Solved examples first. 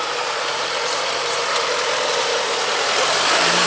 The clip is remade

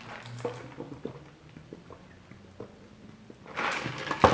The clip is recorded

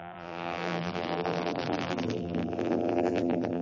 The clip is remade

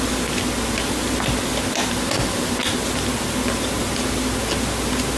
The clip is recorded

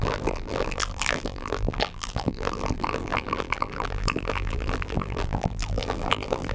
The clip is remade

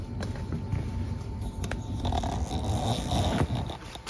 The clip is recorded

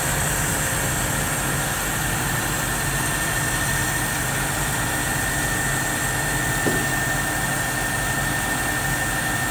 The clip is recorded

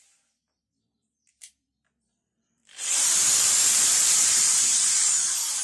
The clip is remade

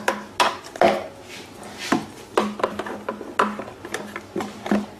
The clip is recorded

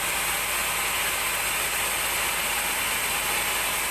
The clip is recorded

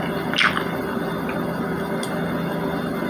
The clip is recorded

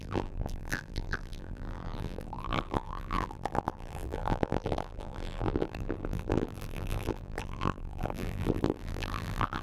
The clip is remade